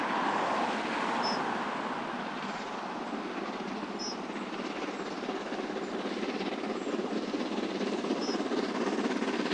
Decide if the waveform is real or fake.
real